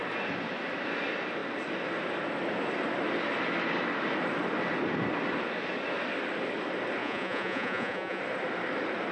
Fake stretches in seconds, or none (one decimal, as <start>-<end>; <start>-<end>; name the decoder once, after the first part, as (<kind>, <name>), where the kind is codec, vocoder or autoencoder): 7.0-8.2 (vocoder, Vocos)